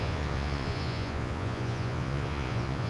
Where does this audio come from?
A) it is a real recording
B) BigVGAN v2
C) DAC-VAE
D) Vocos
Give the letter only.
D